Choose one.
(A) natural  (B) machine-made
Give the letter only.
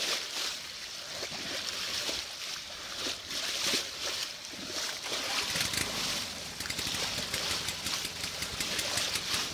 B